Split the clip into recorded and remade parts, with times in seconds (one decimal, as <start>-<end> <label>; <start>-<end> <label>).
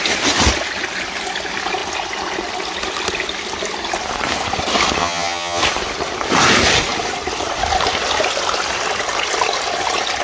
0.0-5.0 recorded; 5.0-5.6 remade; 5.6-10.2 recorded